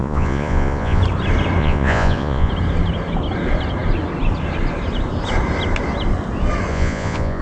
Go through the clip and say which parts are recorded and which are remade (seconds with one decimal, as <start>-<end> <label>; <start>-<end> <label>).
0.0-1.0 remade; 1.0-1.6 recorded; 1.6-2.5 remade; 2.5-6.7 recorded; 6.7-7.4 remade